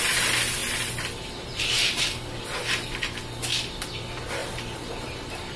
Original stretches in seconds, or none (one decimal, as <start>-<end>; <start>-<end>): 0.0-4.4